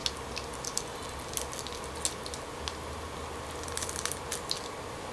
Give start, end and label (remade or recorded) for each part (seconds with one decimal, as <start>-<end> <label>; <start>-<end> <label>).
0.0-5.1 recorded